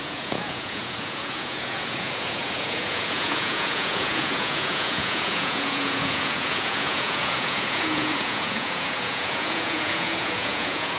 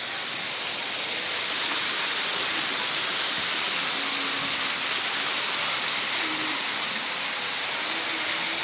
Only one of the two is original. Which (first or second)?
second